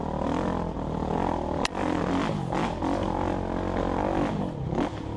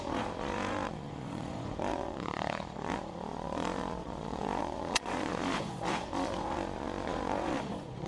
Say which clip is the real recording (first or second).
first